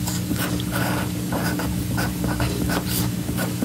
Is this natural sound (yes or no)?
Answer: no